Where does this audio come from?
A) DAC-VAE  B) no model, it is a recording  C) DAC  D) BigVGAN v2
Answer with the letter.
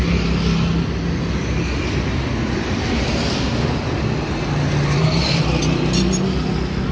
B